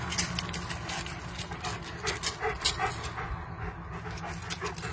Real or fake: real